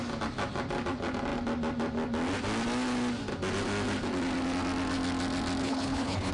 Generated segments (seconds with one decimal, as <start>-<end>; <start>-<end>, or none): 5.6-6.3